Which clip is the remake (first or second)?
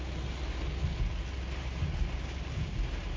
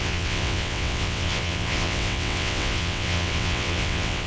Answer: second